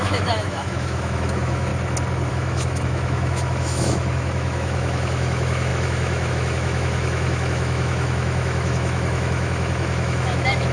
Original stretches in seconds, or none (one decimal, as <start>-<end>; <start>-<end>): 1.7-2.3

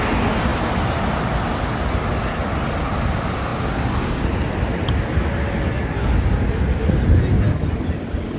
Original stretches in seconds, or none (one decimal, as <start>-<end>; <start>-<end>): 0.0-8.4

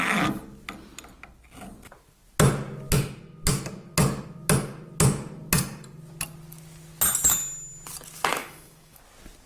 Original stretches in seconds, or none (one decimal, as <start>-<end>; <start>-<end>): 0.0-8.3; 9.0-9.5

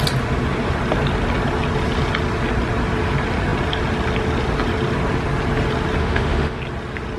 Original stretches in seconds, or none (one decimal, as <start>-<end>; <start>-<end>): 0.0-6.0; 6.6-7.2

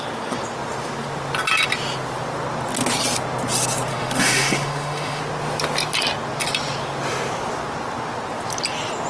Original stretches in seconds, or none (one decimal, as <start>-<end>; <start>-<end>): 0.0-3.9; 5.2-9.1